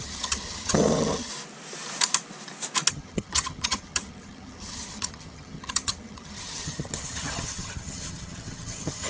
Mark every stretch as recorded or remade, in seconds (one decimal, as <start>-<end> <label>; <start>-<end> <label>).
0.0-1.3 remade; 1.3-2.9 recorded; 2.9-9.1 remade